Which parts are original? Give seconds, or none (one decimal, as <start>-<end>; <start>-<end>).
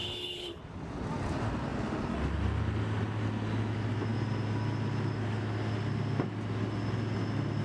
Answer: 0.6-7.6